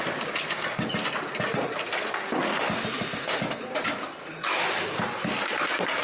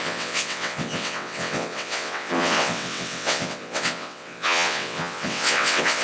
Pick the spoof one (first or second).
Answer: second